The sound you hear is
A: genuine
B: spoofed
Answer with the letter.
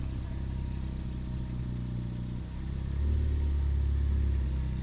A